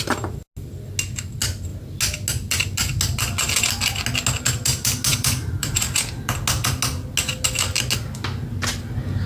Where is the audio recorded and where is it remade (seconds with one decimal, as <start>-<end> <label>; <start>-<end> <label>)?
0.0-5.1 recorded; 5.1-6.0 remade; 6.0-9.3 recorded